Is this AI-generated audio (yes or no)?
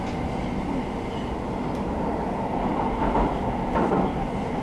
no